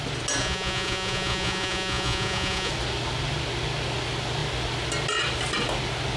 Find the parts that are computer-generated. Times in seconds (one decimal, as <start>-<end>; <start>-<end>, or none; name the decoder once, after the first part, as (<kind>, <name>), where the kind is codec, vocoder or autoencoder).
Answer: 0.4-2.7 (vocoder, Vocos)